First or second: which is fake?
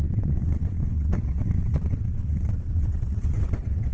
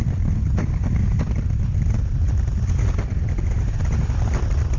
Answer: first